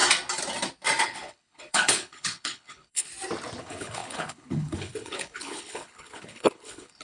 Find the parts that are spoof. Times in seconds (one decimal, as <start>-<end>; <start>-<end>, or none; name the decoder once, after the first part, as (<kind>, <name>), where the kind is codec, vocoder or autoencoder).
1.0-3.1 (codec, HILCodec); 3.6-7.0